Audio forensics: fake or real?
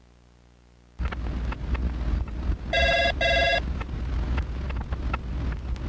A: real